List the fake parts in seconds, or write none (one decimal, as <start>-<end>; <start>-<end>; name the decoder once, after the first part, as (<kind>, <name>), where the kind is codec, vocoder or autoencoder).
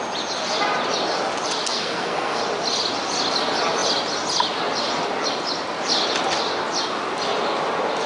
1.7-2.4 (codec, SNAC)